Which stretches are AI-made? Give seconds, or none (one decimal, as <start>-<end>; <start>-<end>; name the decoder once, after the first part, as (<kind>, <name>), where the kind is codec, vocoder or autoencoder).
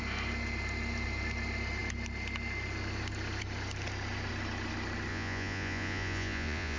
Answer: 5.1-6.8 (vocoder, Vocos)